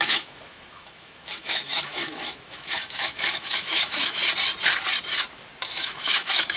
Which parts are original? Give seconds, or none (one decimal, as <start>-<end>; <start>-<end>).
4.2-5.6

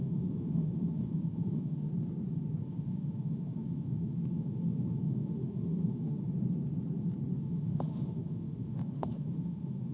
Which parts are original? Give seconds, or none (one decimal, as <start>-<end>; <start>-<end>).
1.9-2.6; 6.2-7.4

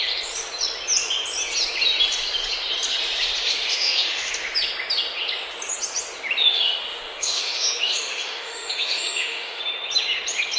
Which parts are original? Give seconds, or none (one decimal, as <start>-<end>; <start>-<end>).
0.0-3.7; 4.3-6.4; 9.6-10.6

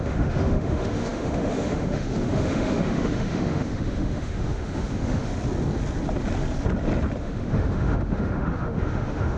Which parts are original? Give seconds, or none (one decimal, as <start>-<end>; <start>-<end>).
5.3-7.2

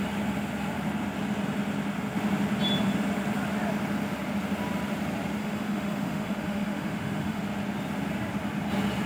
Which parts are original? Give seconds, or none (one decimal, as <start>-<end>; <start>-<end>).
0.0-5.4; 7.4-9.1

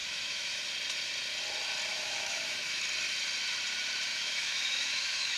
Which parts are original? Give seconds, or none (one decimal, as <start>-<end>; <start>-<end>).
0.6-1.9; 2.8-4.1

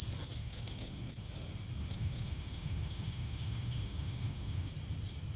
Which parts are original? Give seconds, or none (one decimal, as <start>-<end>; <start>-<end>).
0.0-0.4; 1.3-1.8; 4.7-5.4